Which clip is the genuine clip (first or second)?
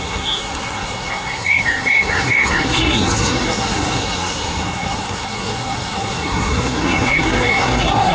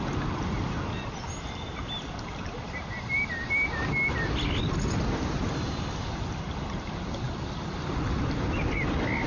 second